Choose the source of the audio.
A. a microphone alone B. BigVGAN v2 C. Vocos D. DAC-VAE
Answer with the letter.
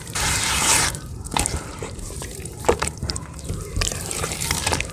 B